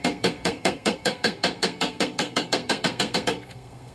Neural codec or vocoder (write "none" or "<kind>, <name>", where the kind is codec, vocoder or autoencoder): codec, SNAC